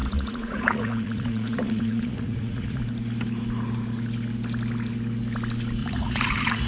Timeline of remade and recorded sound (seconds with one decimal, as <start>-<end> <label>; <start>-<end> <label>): 0.0-2.8 remade; 2.8-5.8 recorded; 5.8-6.7 remade